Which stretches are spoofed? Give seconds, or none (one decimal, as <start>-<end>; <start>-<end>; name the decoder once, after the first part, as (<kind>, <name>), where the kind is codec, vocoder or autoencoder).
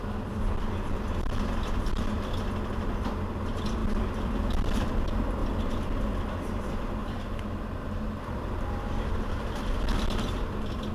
0.0-5.4 (vocoder, BigVGAN v2); 6.2-10.9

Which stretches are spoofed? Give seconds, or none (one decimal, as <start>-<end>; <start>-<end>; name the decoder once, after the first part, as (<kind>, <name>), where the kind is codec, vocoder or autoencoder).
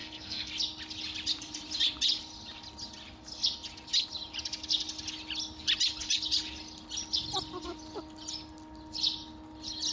0.0-0.5 (codec, SNAC)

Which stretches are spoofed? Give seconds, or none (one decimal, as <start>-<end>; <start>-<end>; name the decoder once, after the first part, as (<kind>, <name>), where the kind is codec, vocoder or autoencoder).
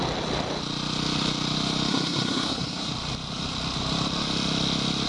1.9-2.9 (codec, SNAC)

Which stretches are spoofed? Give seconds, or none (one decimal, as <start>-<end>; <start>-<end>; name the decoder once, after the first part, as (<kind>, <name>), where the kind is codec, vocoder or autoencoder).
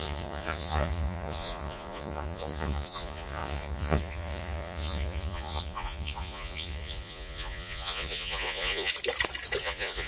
0.0-8.9 (vocoder, Vocos); 9.6-10.1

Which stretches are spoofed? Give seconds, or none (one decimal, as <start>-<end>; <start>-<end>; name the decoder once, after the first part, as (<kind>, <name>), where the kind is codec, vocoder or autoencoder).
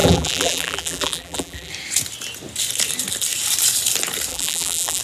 0.0-1.7 (vocoder, BigVGAN v2); 4.3-5.0